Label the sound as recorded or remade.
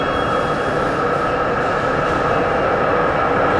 recorded